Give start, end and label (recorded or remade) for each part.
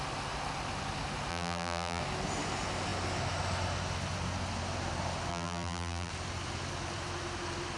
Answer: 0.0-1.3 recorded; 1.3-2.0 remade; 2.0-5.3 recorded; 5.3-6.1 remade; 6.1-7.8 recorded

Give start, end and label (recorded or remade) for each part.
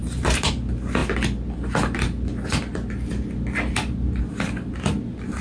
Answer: 0.0-0.5 remade; 0.5-5.4 recorded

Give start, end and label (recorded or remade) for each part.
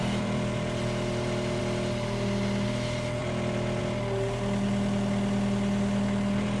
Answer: 0.0-1.6 remade; 1.6-3.2 recorded; 3.2-3.8 remade; 3.8-6.6 recorded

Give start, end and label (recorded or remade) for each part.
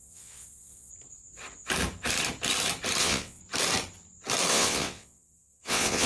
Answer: 0.0-0.9 remade; 0.9-3.0 recorded; 3.0-3.4 remade; 3.4-4.5 recorded; 4.5-6.1 remade